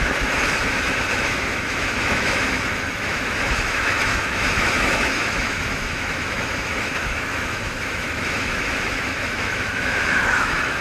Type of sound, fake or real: fake